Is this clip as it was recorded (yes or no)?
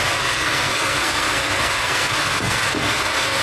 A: no